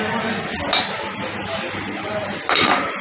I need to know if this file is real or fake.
real